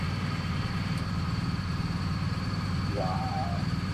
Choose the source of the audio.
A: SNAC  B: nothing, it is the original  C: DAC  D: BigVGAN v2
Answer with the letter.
D